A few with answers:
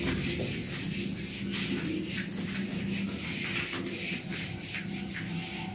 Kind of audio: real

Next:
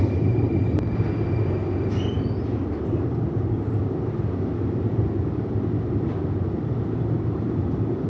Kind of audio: real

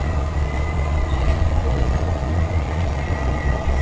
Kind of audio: fake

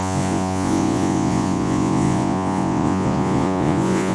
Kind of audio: fake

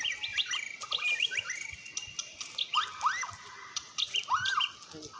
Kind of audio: real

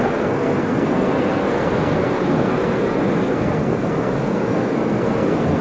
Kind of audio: fake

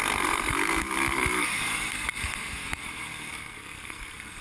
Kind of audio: fake